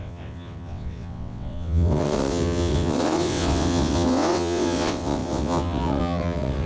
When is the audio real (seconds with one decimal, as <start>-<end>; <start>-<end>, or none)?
none